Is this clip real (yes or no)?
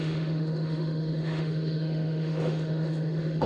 no